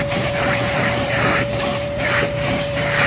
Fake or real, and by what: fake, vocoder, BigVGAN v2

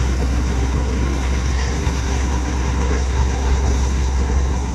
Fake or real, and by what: fake, codec, SNAC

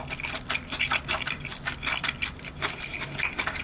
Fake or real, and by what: real